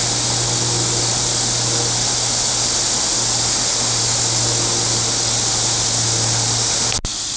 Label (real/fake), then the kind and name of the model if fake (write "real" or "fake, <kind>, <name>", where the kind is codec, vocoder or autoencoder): real